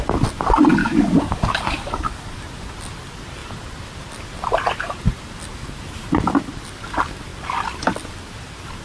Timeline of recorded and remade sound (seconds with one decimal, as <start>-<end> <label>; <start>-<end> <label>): 0.0-0.8 recorded; 0.8-2.4 remade; 2.4-8.8 recorded